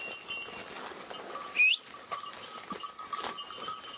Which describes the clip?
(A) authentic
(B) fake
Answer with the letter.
A